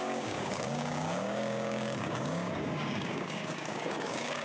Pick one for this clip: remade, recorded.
remade